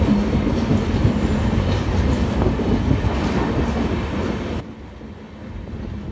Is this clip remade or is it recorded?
recorded